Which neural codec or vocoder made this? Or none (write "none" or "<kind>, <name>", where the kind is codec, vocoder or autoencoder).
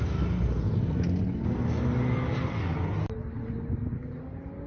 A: none